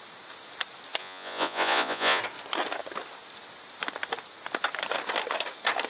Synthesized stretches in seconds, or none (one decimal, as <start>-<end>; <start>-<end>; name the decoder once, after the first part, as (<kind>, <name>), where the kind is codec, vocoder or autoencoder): 1.0-2.2 (vocoder, Vocos)